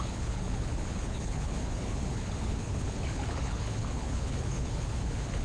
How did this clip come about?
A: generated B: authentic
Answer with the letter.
A